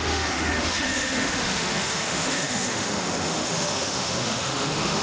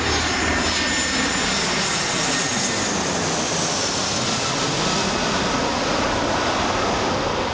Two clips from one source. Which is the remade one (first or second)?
first